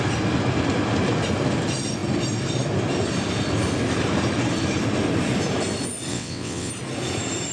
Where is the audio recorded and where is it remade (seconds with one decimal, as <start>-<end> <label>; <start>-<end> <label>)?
0.0-6.1 recorded; 6.1-6.7 remade; 6.7-7.5 recorded